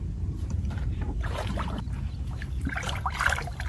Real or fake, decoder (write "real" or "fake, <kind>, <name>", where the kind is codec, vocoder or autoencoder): fake, vocoder, BigVGAN v2